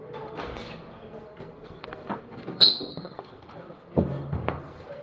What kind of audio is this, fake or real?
fake